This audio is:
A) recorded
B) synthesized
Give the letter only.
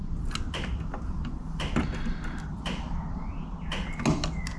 A